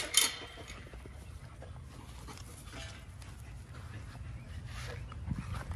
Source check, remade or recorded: recorded